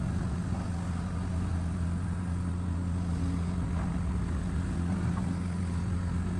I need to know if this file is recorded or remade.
recorded